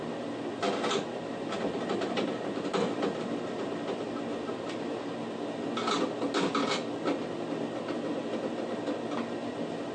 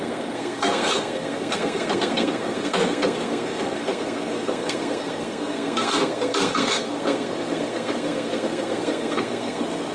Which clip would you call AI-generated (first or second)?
second